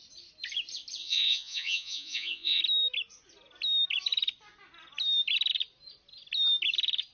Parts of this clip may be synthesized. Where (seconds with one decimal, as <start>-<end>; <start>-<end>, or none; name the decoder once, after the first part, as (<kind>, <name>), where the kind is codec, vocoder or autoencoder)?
1.0-2.6 (vocoder, Vocos)